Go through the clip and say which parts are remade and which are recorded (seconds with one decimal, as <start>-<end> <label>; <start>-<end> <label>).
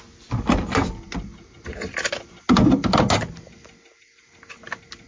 0.0-5.1 recorded